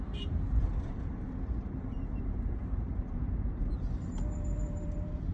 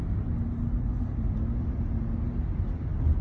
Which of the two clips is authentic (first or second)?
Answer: second